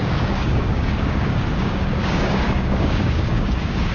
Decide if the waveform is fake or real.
fake